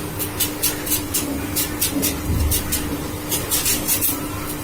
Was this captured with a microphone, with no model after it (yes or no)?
yes